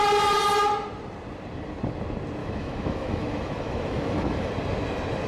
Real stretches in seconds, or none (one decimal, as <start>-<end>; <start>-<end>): 0.0-2.4; 4.5-5.3